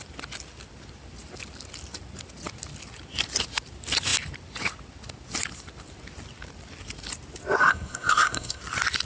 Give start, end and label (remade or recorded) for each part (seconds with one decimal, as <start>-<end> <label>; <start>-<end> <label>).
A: 0.0-7.6 recorded; 7.6-8.6 remade; 8.6-9.1 recorded